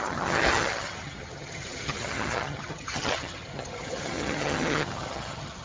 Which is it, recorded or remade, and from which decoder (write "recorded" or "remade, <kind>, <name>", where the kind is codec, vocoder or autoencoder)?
remade, vocoder, HiFi-GAN